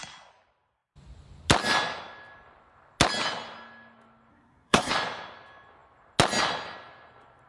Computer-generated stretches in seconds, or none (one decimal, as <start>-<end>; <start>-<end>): 4.3-4.9

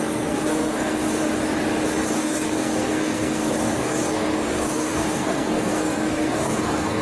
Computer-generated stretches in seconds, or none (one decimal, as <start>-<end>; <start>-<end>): 0.0-1.0; 2.0-7.0

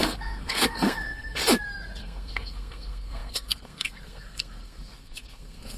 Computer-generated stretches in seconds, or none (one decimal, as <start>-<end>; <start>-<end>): 0.0-1.4; 2.0-5.8

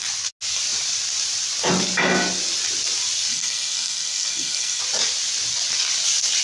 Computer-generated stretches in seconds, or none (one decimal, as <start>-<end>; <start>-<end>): 3.3-4.8